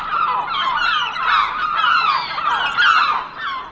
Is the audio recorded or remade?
recorded